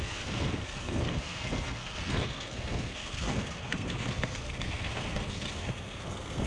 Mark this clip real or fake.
fake